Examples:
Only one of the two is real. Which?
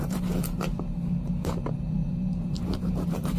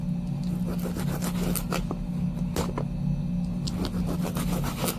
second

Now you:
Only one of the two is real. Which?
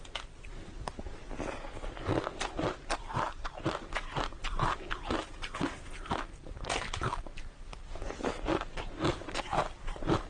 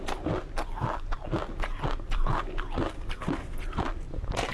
second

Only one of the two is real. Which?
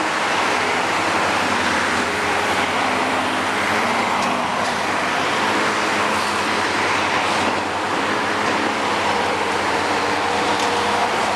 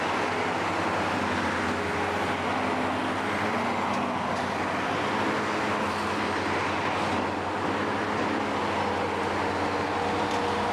second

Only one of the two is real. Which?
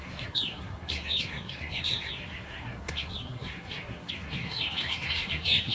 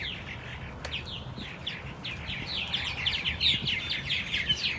second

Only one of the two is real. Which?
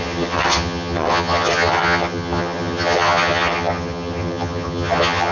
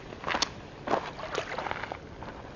second